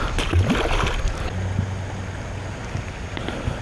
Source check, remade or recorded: recorded